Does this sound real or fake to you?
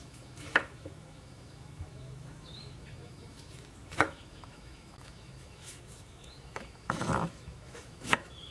fake